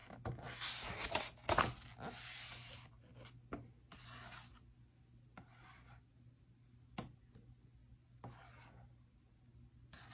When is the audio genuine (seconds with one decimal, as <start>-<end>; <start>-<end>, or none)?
0.0-10.1